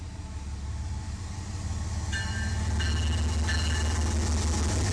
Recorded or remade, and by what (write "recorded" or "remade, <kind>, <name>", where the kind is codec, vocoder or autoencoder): recorded